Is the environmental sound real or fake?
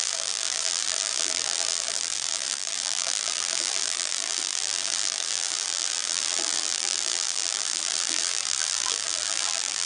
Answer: fake